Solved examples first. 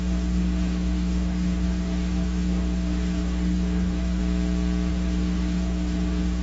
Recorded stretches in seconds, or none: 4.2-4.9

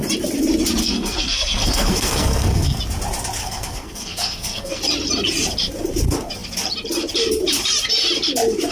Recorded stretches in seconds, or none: 0.0-0.8; 2.8-3.4; 4.8-8.7

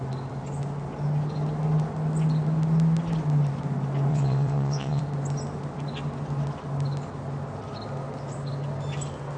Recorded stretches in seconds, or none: 0.0-4.1; 5.0-9.4